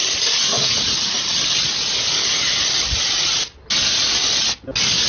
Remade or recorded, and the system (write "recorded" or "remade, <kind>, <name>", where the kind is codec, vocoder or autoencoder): recorded